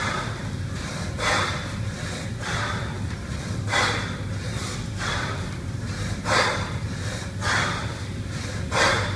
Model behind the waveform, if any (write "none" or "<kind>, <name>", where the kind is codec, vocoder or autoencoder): none